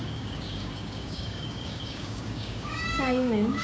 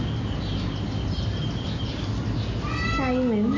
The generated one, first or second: first